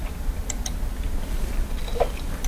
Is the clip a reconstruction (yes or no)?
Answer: yes